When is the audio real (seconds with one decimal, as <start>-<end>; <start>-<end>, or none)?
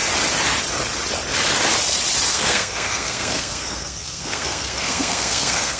0.0-2.3